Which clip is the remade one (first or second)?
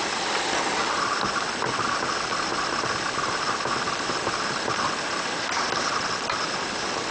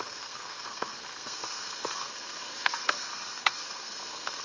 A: second